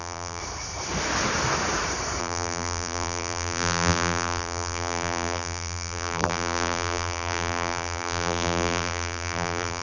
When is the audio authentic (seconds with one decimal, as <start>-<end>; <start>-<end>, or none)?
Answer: 0.4-2.2